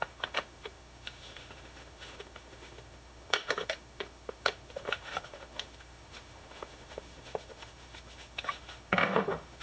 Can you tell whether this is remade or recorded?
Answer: remade